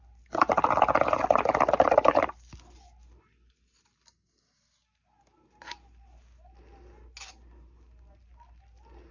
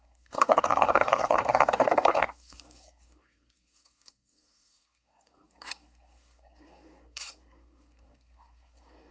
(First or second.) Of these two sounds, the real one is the first